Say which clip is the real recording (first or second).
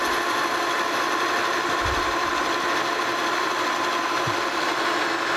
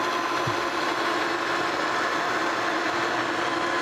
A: second